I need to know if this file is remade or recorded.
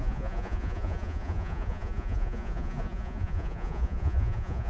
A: remade